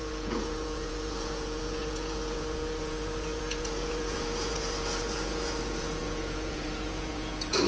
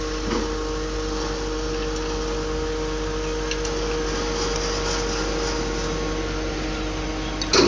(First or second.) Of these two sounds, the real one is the second